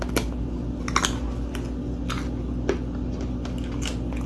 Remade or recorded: recorded